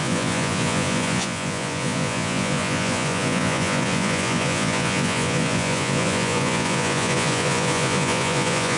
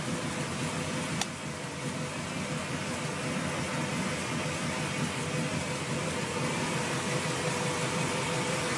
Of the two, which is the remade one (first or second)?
first